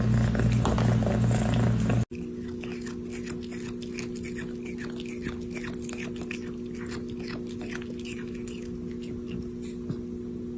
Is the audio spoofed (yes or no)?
no